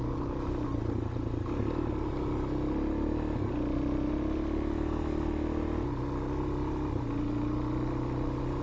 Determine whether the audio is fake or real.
real